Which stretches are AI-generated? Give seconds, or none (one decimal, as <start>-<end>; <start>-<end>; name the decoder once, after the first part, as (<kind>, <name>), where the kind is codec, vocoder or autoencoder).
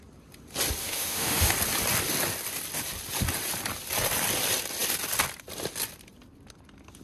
0.8-1.5 (autoencoder, DAC-VAE)